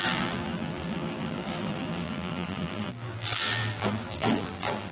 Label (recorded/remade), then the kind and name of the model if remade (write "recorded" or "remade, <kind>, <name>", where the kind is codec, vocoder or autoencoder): remade, vocoder, BigVGAN v2